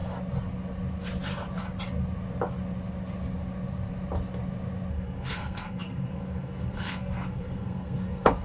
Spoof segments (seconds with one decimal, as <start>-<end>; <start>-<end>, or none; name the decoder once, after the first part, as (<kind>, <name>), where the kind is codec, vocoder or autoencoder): 4.9-8.4 (codec, SNAC)